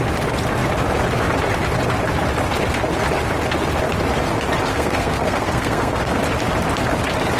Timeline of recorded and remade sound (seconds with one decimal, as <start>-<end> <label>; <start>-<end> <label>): 0.0-4.7 recorded; 4.7-6.2 remade; 6.2-7.4 recorded